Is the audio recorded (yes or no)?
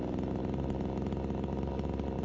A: yes